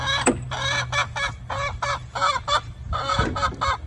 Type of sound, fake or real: real